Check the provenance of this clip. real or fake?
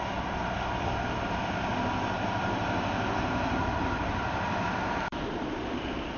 fake